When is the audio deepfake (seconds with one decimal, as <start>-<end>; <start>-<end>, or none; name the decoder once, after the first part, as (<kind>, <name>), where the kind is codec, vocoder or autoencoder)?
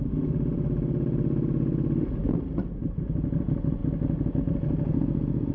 0.0-3.8 (vocoder, BigVGAN v2); 4.4-5.5